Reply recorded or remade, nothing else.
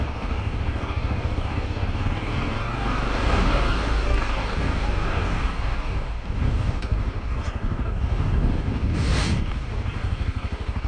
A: remade